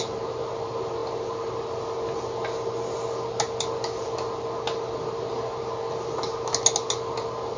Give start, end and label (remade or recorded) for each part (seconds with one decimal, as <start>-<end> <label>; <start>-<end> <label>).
0.0-7.6 recorded